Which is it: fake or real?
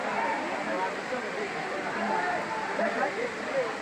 real